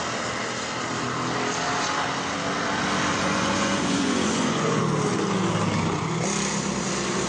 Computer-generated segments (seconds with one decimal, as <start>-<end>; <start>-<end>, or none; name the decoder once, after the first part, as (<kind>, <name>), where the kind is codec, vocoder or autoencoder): 3.1-4.8 (vocoder, Vocos)